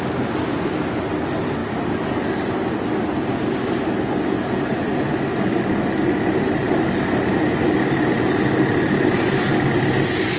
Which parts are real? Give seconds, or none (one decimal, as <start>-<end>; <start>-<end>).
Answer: 0.0-10.4